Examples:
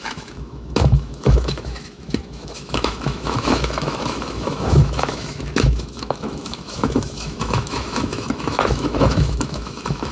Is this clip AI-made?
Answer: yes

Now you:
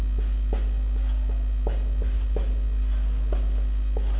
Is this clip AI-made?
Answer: no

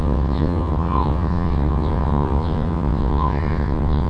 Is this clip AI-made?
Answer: yes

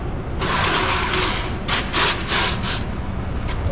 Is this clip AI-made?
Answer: no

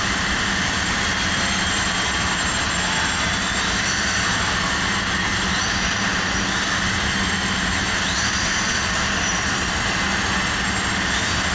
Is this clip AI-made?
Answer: no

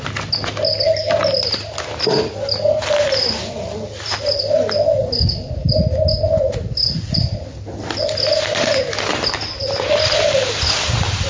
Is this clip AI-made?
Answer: no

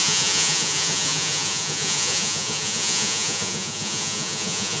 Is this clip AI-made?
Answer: yes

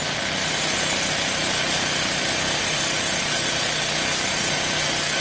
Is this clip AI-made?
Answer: no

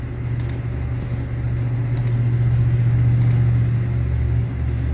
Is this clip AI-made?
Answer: no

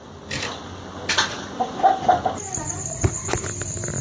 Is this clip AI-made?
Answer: no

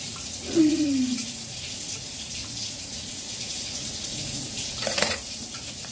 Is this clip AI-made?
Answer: yes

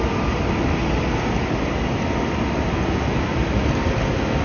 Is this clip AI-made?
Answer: no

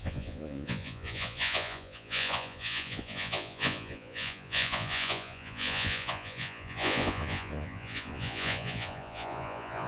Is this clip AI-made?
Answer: yes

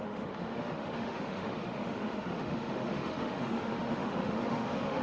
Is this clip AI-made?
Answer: yes